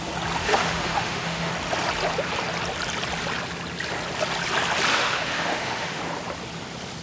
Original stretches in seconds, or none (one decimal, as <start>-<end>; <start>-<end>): 0.0-0.4; 1.5-4.9; 6.0-7.0